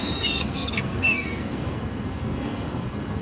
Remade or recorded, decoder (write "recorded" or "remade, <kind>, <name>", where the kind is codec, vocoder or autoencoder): remade, codec, SNAC